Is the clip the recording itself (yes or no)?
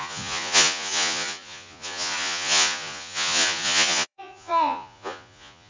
no